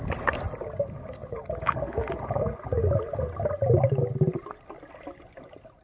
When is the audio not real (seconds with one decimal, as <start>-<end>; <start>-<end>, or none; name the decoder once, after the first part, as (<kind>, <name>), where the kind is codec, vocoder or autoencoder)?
none